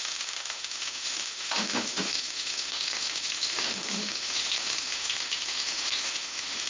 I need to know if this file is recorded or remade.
remade